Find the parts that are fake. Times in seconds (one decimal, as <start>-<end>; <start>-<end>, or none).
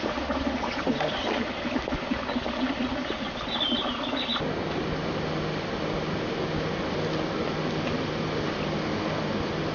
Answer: none